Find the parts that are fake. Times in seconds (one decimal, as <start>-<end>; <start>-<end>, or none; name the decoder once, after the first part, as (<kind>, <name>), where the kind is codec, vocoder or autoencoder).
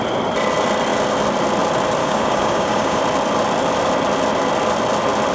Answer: 2.0-3.0 (codec, DAC)